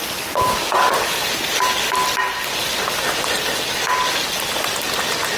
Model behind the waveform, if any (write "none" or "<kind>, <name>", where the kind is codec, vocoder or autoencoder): none